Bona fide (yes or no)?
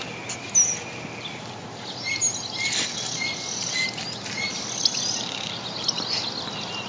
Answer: yes